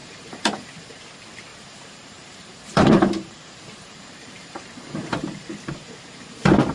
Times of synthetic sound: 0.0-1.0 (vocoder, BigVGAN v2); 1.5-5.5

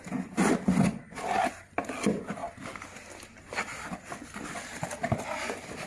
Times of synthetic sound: none

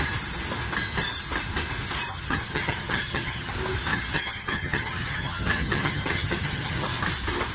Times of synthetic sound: 2.1-3.5 (vocoder, HiFi-GAN); 3.9-7.0

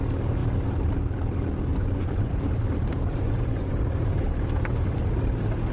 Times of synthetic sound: 1.7-2.3 (vocoder, Vocos); 3.2-3.7

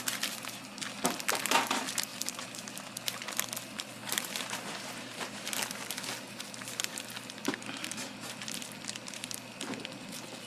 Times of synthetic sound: none

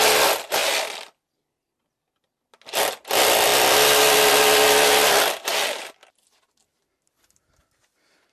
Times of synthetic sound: none